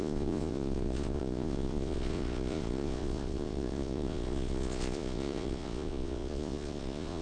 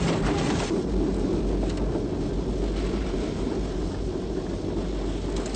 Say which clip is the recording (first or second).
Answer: second